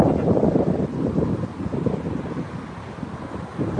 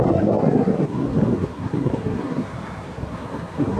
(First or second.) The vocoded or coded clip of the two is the second